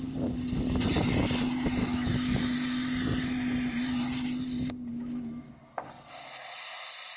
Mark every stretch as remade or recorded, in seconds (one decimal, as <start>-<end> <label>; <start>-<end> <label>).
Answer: 0.0-1.8 recorded; 1.8-2.4 remade; 2.4-4.9 recorded; 4.9-5.5 remade; 5.5-7.2 recorded